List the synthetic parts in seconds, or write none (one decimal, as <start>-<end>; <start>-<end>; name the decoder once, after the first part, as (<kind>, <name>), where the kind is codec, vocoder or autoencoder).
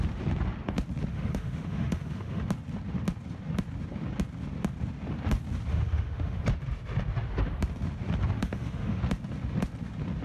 1.1-2.4 (autoencoder, DAC-VAE); 5.7-6.4; 8.4-9.0